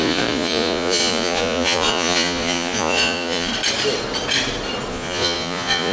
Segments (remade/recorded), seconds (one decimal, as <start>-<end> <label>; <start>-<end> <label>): 0.0-3.5 remade; 3.5-4.9 recorded; 4.9-5.9 remade